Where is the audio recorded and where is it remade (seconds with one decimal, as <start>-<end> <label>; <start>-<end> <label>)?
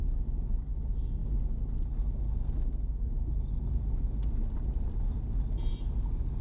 0.0-6.4 recorded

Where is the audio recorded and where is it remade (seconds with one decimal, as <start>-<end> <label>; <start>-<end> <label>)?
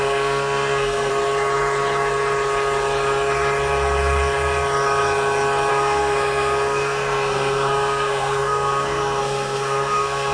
0.0-1.1 remade; 1.1-5.7 recorded; 5.7-10.3 remade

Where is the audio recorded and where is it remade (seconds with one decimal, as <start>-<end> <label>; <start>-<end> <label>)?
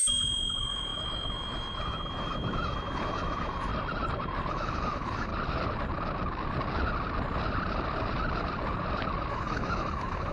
0.0-3.7 remade; 3.7-4.5 recorded; 4.5-5.3 remade; 5.3-9.3 recorded; 9.3-10.3 remade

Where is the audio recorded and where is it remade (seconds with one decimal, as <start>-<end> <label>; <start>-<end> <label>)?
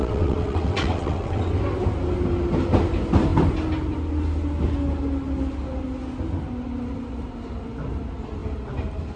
0.0-1.5 remade; 1.5-9.2 recorded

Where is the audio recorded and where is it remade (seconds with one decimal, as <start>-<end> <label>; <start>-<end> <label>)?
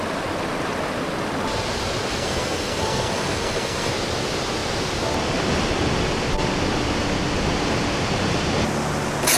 0.0-2.1 recorded; 2.1-3.9 remade; 3.9-9.4 recorded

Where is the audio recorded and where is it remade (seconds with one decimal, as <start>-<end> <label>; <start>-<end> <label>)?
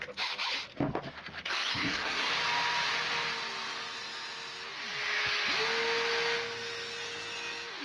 0.0-1.7 recorded; 1.7-2.3 remade; 2.3-7.8 recorded